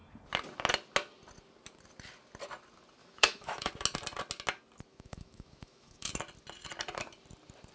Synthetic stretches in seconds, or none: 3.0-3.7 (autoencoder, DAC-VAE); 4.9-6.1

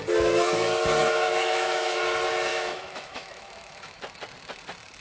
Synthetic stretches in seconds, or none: 1.0-2.0 (autoencoder, DAC-VAE); 2.5-4.0

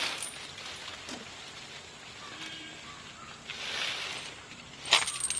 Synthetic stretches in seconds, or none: none

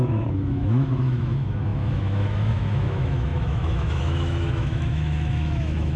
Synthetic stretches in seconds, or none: 0.0-6.0 (autoencoder, DAC-VAE)

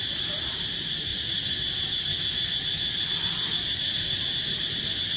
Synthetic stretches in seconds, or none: none